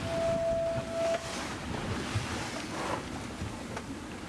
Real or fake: real